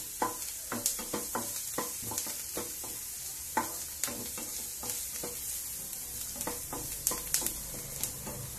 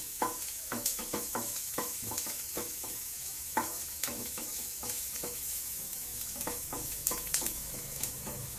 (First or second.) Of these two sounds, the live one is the first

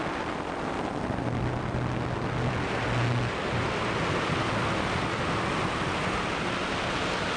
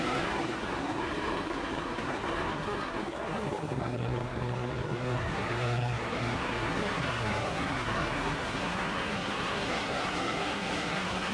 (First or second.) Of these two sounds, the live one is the first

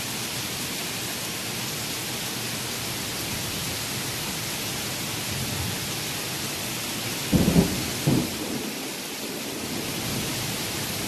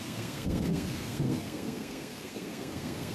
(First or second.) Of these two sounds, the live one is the first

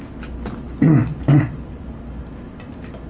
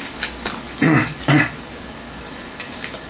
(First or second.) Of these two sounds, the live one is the first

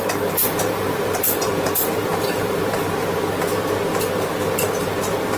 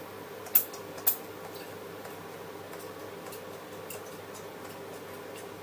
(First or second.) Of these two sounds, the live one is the second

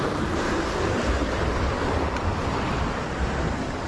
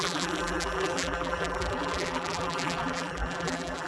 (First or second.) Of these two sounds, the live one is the first